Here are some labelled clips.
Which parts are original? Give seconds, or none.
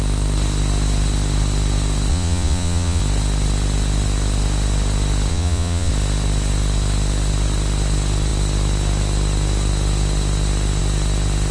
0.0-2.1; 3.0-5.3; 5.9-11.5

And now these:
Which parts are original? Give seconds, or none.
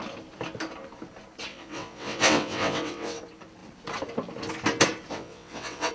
0.0-1.5; 3.2-5.1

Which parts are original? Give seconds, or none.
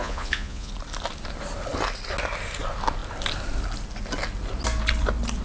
0.7-5.4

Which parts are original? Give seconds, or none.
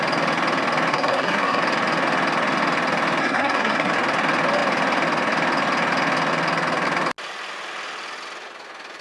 0.0-0.9; 1.6-3.2; 3.9-9.0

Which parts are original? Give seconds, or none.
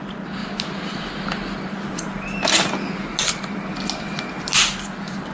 0.0-5.3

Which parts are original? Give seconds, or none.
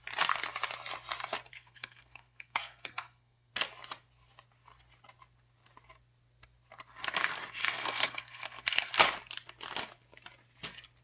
0.0-1.5; 3.5-7.6; 8.9-11.0